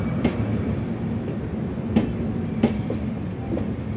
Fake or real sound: real